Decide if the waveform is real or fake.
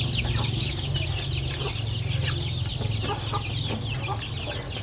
real